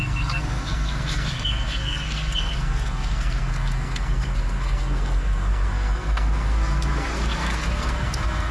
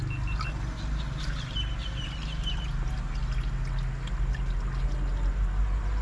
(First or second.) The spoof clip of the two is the first